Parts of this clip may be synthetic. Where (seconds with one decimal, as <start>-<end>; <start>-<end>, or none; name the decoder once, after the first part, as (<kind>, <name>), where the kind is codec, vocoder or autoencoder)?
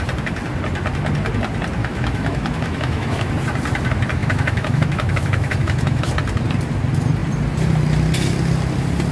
1.8-3.3 (autoencoder, DAC-VAE); 4.2-6.1